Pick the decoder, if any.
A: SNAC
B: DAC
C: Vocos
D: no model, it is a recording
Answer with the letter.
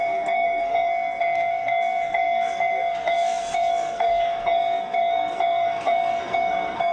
A